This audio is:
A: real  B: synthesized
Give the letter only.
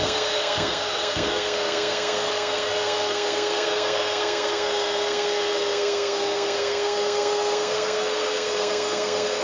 B